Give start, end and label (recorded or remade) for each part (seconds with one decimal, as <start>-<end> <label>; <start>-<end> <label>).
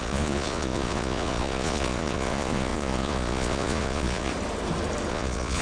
0.0-4.3 remade; 4.3-5.1 recorded; 5.1-5.6 remade